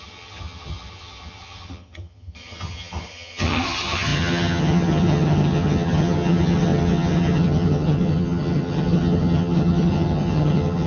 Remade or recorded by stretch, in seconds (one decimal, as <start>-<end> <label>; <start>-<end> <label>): 0.0-10.9 remade